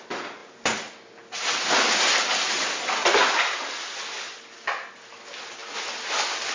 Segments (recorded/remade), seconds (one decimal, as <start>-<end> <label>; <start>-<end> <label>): 0.0-6.5 recorded